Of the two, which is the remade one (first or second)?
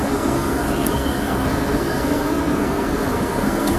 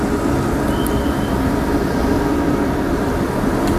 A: first